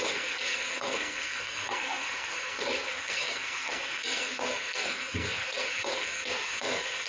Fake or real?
fake